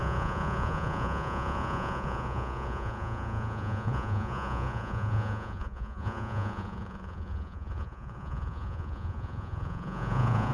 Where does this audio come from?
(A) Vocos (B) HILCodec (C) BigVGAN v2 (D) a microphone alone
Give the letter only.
A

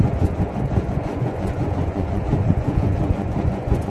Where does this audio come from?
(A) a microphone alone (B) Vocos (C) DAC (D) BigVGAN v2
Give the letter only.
B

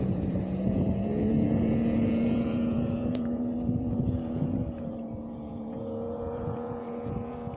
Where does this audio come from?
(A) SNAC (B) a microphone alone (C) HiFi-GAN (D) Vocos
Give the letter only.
D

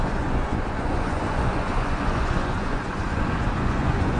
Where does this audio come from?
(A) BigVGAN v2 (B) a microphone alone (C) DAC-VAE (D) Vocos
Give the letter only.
D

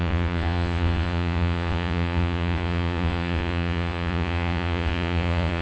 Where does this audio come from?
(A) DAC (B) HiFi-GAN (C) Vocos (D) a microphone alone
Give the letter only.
C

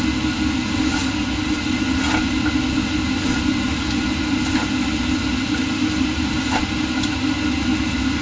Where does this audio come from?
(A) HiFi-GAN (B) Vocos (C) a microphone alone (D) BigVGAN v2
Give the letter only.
C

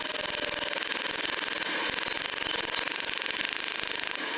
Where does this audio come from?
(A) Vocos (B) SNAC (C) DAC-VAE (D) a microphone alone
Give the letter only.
D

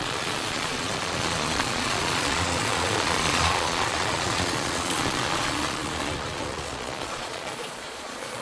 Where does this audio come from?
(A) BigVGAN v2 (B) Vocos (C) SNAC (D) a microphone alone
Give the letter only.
B